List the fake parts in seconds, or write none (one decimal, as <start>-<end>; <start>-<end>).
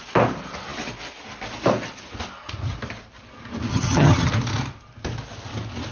3.7-4.3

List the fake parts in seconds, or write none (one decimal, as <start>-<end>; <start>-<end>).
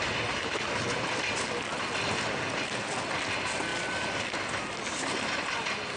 none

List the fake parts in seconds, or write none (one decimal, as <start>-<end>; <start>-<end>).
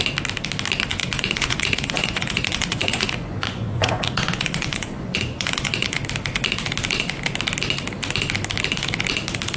0.9-6.0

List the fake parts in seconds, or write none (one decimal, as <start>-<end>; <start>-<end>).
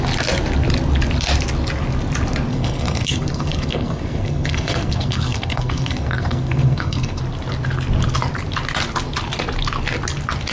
2.5-7.2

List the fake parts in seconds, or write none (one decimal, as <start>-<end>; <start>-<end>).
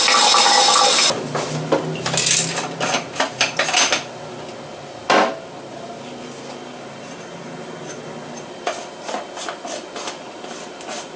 none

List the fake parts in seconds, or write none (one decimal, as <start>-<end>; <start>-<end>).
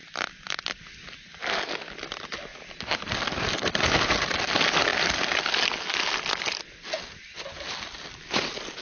none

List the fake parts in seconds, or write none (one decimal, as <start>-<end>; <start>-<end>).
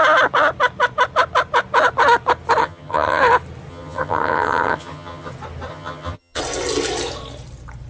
2.6-3.2; 3.7-5.3; 5.7-6.4